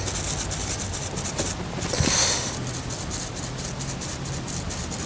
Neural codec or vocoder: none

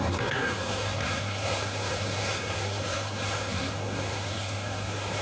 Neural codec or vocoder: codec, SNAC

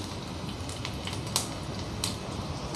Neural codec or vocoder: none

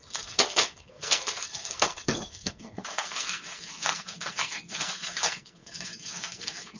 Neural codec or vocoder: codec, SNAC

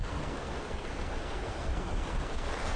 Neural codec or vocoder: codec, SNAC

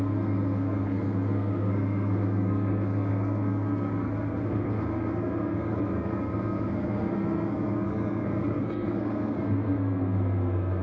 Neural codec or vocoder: codec, SNAC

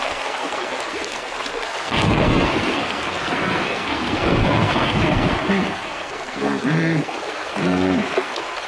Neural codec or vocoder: codec, SNAC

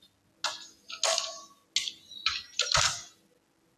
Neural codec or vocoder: none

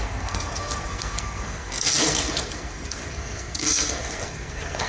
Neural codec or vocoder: codec, SNAC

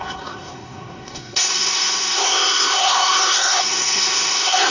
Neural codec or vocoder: codec, SNAC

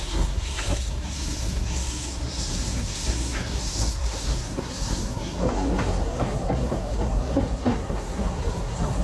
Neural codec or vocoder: codec, SNAC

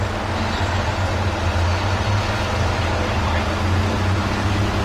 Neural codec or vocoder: none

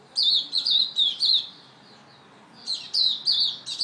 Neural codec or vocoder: none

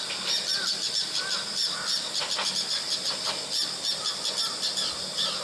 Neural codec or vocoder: none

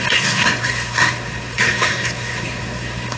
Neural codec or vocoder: codec, SNAC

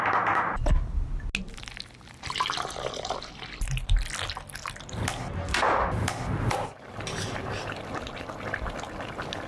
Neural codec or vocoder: none